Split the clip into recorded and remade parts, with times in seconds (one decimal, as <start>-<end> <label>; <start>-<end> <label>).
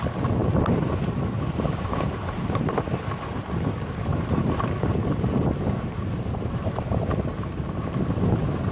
0.0-0.4 recorded; 0.4-3.1 remade; 3.1-4.1 recorded; 4.1-8.7 remade